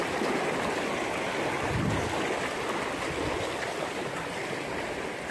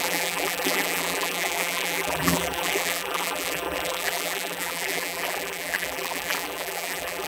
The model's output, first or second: second